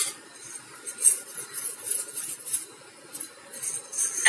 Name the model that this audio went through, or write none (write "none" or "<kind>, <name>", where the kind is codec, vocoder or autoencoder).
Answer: none